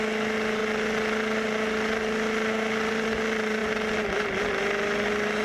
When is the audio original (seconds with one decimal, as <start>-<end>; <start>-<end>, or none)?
0.0-5.4